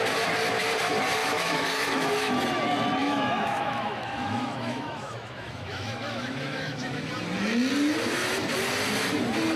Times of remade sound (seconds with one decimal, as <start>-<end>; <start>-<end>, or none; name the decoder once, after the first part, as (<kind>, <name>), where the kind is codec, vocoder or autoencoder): 1.2-2.3 (autoencoder, DAC-VAE); 3.0-7.1

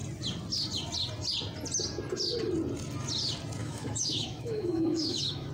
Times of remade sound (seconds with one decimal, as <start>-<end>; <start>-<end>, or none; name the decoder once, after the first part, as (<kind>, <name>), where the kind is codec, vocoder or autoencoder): 3.6-5.5 (autoencoder, DAC-VAE)